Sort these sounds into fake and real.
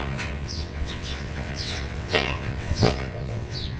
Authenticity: fake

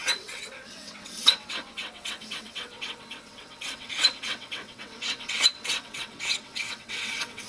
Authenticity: fake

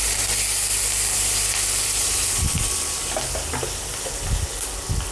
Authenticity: real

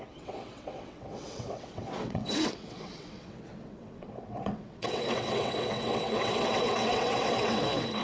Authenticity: fake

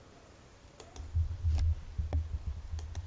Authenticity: real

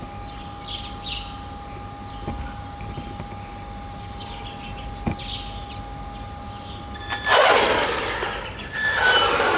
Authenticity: real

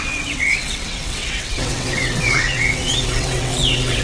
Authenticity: fake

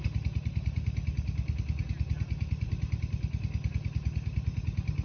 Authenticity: real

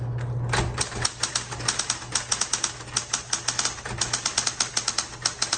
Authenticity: real